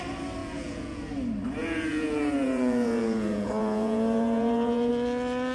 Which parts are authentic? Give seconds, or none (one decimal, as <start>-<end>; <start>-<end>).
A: 0.0-0.4; 1.0-1.6; 4.9-5.5